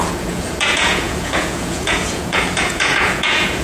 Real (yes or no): no